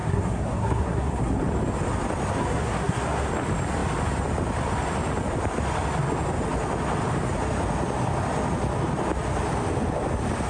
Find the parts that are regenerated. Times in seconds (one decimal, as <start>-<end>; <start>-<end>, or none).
0.0-1.4; 2.4-3.3